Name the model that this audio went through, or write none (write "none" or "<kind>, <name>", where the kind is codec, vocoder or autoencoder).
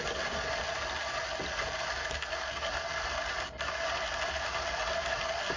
none